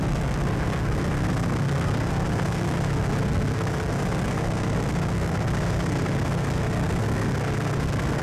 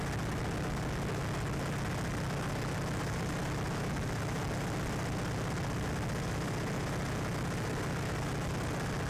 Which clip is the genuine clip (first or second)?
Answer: second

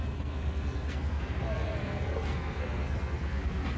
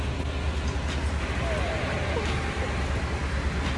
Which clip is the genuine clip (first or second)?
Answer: second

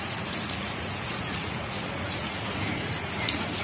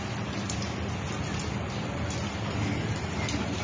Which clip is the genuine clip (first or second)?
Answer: second